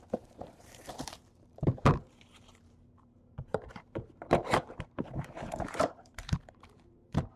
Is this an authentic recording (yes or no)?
no